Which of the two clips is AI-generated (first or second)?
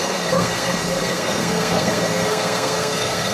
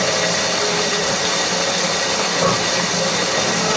first